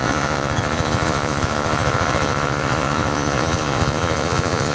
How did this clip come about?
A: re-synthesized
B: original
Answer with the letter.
A